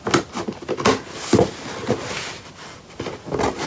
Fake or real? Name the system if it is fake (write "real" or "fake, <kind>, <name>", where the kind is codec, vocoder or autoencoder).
real